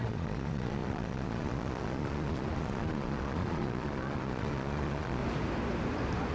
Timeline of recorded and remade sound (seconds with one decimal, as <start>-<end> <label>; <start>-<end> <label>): 0.0-5.2 remade; 5.2-6.3 recorded